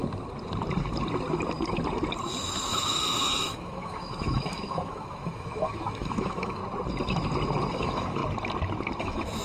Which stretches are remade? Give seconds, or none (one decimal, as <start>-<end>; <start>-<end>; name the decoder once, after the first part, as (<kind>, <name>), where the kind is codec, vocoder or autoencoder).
2.4-6.6 (autoencoder, DAC-VAE); 7.7-8.2; 9.0-9.4